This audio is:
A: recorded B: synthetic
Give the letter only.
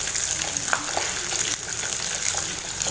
A